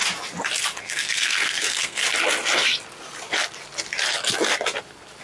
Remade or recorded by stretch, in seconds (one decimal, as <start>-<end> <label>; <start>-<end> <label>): 0.0-0.8 recorded; 0.8-2.0 remade; 2.0-5.2 recorded